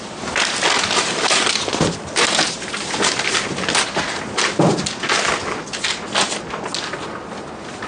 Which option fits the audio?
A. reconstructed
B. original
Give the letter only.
B